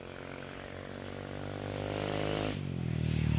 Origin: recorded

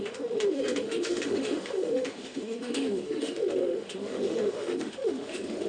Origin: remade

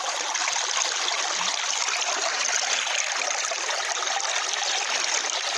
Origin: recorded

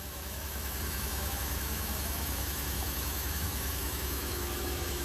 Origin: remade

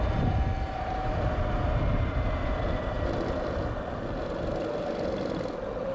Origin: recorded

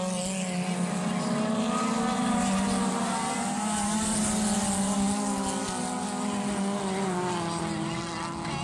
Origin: recorded